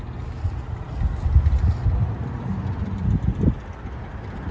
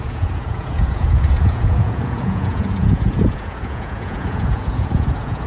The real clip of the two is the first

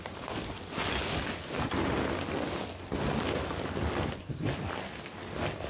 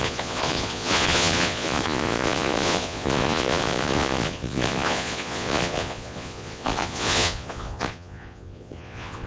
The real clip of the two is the first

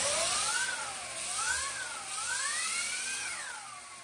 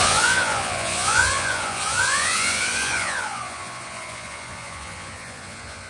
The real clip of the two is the first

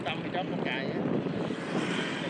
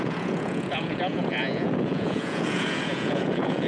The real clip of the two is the first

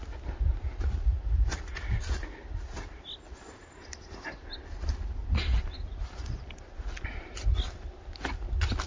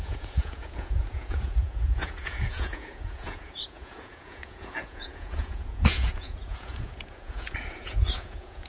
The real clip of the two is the first